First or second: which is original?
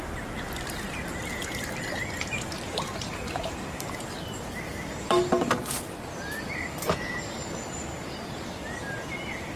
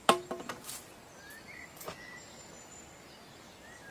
second